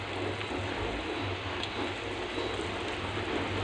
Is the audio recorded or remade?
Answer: recorded